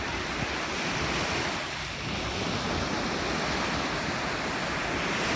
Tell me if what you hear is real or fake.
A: real